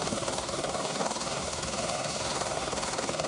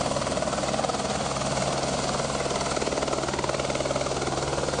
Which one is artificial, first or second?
first